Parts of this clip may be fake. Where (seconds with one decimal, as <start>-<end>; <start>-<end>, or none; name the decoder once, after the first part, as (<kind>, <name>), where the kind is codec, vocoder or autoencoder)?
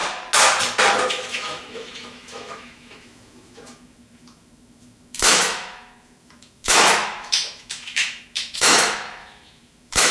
1.1-10.1 (autoencoder, DAC-VAE)